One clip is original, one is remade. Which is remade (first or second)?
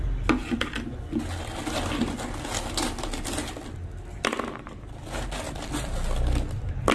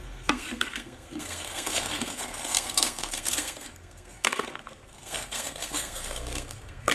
second